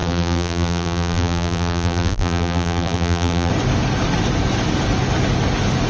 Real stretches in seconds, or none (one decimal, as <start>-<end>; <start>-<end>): 3.5-5.9